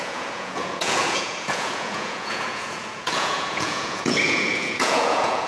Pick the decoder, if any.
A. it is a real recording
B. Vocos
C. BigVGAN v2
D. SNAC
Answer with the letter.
B